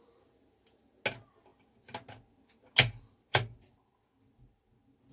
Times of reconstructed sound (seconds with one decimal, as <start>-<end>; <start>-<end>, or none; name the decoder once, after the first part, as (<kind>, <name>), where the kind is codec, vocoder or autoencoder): none